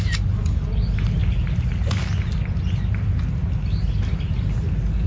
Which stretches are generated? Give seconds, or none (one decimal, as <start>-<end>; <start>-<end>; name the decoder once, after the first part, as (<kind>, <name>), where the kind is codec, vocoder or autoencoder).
none